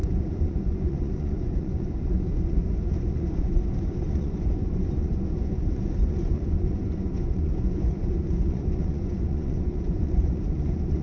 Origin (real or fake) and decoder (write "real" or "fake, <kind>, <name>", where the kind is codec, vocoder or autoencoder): fake, vocoder, Vocos